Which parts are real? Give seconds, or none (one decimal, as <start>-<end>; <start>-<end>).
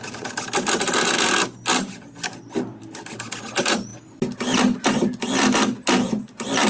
0.0-6.7